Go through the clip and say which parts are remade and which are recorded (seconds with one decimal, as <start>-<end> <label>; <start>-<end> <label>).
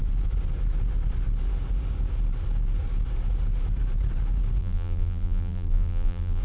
0.0-4.6 recorded; 4.6-6.4 remade